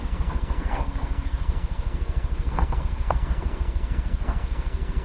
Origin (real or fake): fake